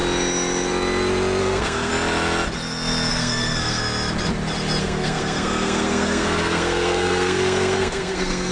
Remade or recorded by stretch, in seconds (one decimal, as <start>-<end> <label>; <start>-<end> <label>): 0.0-1.4 recorded; 1.4-1.9 remade; 1.9-3.1 recorded; 3.1-3.8 remade; 3.8-4.8 recorded; 4.8-8.5 remade